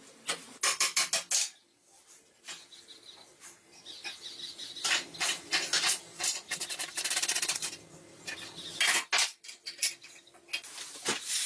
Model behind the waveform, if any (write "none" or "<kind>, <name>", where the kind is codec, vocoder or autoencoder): none